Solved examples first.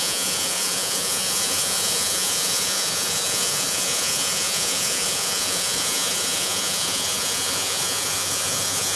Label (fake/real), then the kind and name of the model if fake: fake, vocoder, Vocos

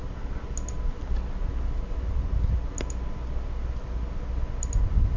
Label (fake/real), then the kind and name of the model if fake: real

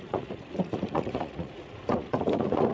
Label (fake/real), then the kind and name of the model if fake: fake, vocoder, Vocos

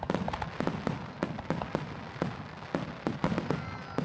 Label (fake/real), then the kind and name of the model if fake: real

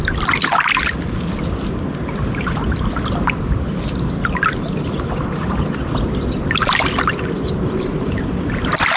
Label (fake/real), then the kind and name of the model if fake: real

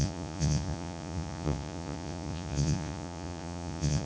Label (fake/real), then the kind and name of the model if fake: fake, vocoder, Vocos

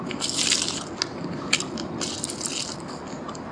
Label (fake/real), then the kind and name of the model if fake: real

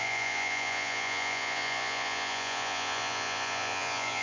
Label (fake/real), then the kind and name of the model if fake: fake, vocoder, Vocos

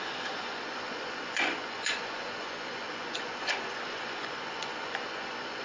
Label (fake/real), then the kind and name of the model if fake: fake, vocoder, Vocos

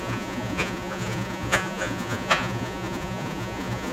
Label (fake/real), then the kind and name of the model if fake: fake, vocoder, Vocos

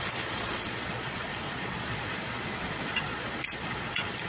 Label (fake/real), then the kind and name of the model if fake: fake, vocoder, Vocos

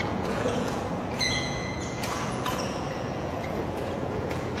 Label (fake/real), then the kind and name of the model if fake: fake, vocoder, Vocos